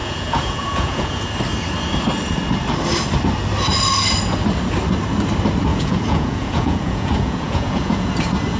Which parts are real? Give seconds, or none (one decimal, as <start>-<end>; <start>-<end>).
1.2-5.7; 8.1-8.6